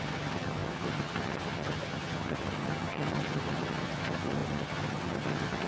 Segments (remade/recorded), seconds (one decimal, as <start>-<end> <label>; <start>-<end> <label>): 0.0-5.7 remade